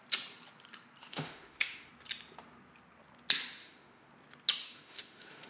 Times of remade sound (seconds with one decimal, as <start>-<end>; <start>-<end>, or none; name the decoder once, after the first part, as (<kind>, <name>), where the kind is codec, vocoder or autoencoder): 1.0-1.9 (autoencoder, DAC-VAE); 3.6-4.1; 4.6-5.5